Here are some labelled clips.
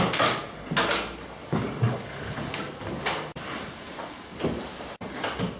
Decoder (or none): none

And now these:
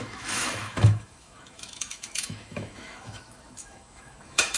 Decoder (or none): autoencoder, DAC-VAE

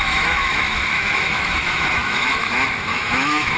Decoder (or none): autoencoder, DAC-VAE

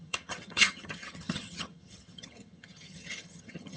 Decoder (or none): vocoder, HiFi-GAN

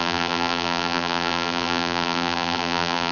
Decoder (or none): vocoder, BigVGAN v2